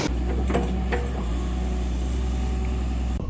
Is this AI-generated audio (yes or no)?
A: no